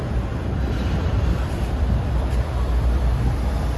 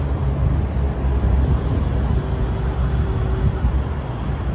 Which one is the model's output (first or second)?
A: first